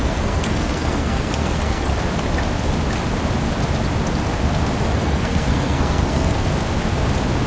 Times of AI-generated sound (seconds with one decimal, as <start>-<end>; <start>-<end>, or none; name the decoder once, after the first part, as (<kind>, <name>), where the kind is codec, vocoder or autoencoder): 0.0-1.9 (codec, SNAC); 4.8-6.5